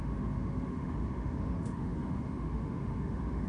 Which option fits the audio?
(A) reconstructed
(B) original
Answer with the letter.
A